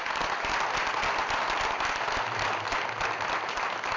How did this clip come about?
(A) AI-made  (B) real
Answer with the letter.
B